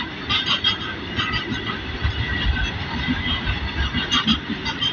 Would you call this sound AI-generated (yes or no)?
no